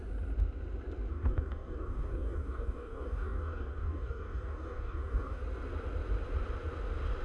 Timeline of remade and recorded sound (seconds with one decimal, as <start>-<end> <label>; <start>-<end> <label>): 0.0-1.1 recorded; 1.1-5.4 remade; 5.4-7.2 recorded